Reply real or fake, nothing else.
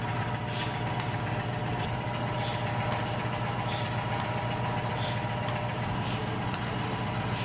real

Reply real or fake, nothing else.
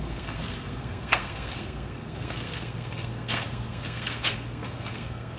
fake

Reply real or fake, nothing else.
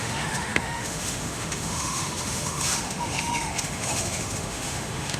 fake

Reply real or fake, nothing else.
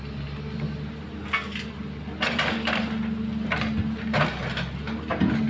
real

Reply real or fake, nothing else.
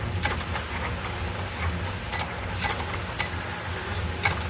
real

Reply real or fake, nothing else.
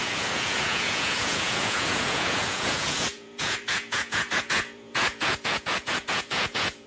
fake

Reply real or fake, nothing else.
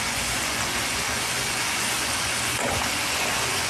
fake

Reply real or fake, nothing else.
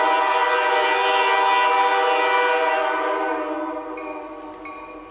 real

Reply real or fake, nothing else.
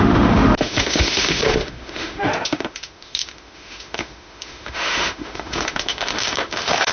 fake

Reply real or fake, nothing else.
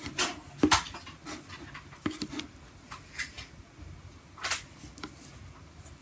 real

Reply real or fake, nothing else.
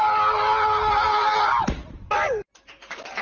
real